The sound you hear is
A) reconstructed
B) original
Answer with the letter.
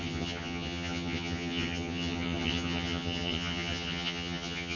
A